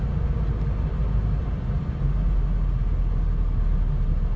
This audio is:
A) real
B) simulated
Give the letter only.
A